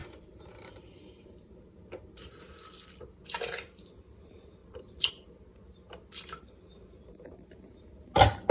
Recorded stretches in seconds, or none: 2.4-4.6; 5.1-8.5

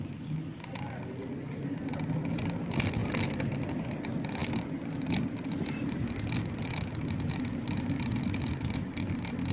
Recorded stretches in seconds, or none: 0.0-9.5

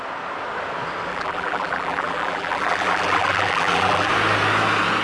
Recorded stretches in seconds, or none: 0.0-1.1; 4.1-5.0